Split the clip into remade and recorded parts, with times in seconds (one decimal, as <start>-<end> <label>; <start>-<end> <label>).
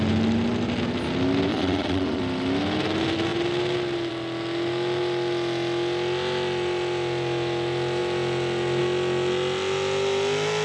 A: 0.0-1.5 recorded; 1.5-2.2 remade; 2.2-10.6 recorded